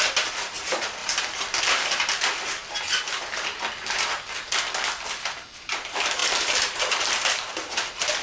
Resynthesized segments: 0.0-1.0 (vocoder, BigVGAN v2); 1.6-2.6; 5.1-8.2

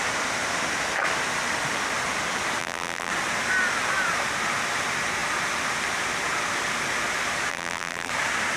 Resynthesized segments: 2.6-3.1 (vocoder, BigVGAN v2); 7.5-8.1

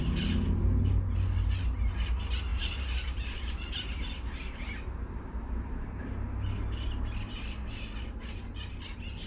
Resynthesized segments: 2.5-6.0 (vocoder, BigVGAN v2)